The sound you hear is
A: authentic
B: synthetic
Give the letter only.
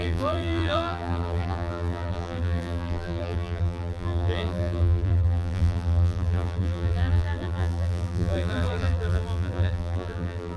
B